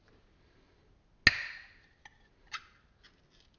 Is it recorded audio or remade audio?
recorded